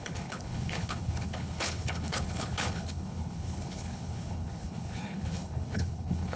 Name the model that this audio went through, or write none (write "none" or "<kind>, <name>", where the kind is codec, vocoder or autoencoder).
codec, HILCodec